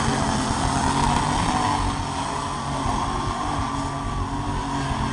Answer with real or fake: real